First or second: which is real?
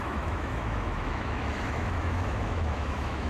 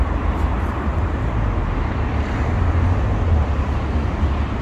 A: second